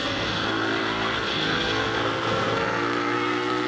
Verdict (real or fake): fake